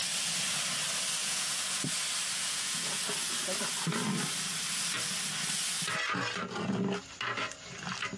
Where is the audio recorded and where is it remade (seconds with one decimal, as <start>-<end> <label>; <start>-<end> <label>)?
0.0-1.2 recorded; 1.2-1.8 remade; 1.8-2.3 recorded; 2.3-3.0 remade; 3.0-8.2 recorded